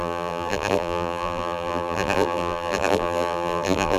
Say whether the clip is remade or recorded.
remade